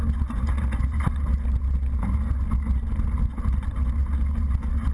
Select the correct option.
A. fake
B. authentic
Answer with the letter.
B